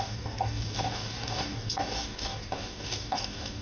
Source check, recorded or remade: remade